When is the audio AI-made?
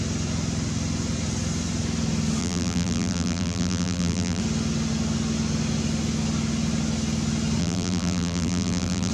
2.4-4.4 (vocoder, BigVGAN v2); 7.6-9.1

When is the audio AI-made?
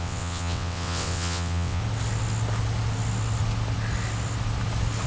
0.0-1.8 (vocoder, WaveNeXt)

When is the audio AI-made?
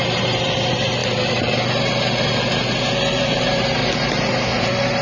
0.0-1.0 (vocoder, BigVGAN v2); 3.2-3.8; 4.6-5.0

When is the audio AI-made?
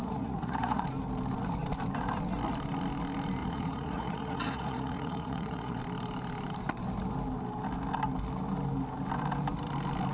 0.0-0.8 (vocoder, Vocos); 3.4-5.8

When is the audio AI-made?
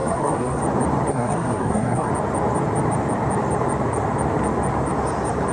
0.0-0.6 (codec, SNAC); 1.1-2.1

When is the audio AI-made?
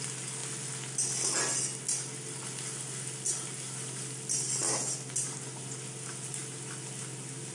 none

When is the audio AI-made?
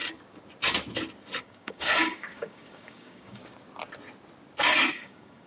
1.4-3.4 (codec, DAC); 4.9-5.5